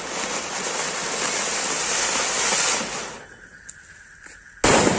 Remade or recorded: recorded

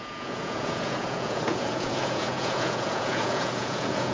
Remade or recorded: remade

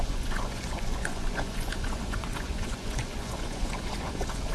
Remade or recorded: remade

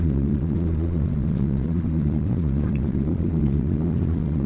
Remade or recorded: remade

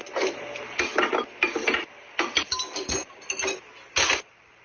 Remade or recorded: recorded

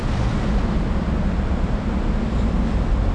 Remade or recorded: recorded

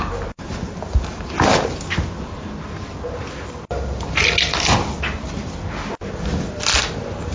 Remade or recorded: recorded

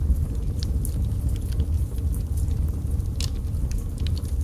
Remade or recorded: recorded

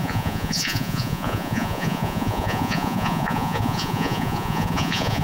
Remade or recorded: remade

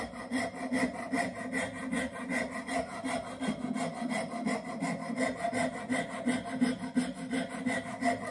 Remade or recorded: recorded